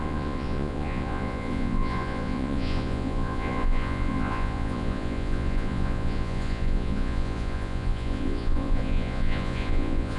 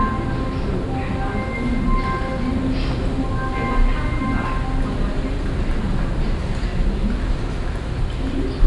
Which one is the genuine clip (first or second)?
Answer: second